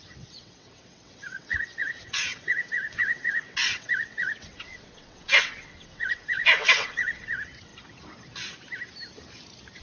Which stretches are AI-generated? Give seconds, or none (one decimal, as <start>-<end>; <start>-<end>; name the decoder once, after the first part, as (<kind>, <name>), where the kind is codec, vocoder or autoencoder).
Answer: 0.0-7.7 (vocoder, WaveNeXt)